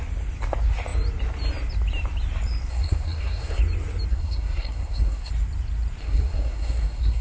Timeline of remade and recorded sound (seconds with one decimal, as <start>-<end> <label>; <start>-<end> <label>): 0.0-2.7 recorded; 2.7-3.6 remade; 3.6-4.1 recorded; 4.1-5.3 remade; 5.3-6.0 recorded; 6.0-7.2 remade

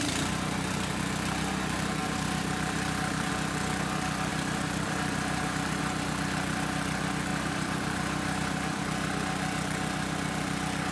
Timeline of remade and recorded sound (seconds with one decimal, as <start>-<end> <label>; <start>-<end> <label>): 0.0-2.0 recorded; 2.0-3.3 remade; 3.3-4.3 recorded; 4.3-5.8 remade; 5.8-7.3 recorded; 7.3-8.8 remade; 8.8-10.9 recorded

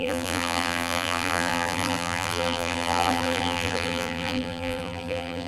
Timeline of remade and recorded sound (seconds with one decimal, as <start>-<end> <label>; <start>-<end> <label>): 0.0-5.5 remade